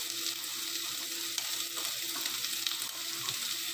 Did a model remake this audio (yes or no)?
no